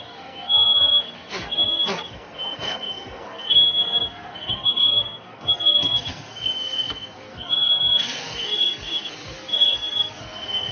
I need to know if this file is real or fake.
fake